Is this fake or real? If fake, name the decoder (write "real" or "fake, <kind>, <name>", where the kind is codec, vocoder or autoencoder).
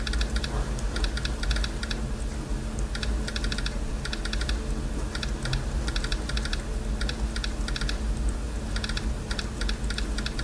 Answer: real